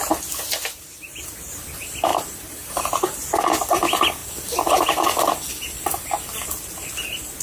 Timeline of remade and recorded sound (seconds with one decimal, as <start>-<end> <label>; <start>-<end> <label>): 0.0-7.4 recorded

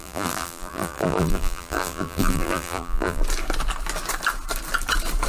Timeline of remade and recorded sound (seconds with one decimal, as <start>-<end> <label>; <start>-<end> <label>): 0.0-3.2 remade; 3.2-5.3 recorded

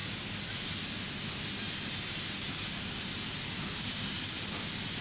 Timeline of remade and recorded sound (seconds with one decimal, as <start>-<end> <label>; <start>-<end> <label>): 0.0-5.0 recorded

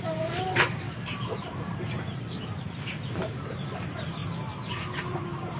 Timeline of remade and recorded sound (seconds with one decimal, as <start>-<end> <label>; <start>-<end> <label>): 0.0-4.2 remade; 4.2-5.0 recorded; 5.0-5.6 remade

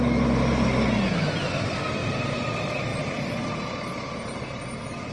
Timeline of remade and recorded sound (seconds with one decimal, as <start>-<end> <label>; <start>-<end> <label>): 0.0-2.0 recorded; 2.0-2.5 remade; 2.5-2.9 recorded; 2.9-3.6 remade; 3.6-5.1 recorded